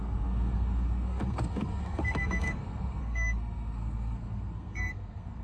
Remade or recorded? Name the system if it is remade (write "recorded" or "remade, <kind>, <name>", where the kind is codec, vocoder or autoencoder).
remade, codec, SNAC